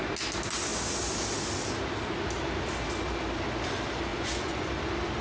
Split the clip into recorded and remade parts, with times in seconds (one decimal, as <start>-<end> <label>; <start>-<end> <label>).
0.0-4.1 recorded; 4.1-4.7 remade; 4.7-5.2 recorded